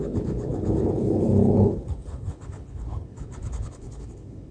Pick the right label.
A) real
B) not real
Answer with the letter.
B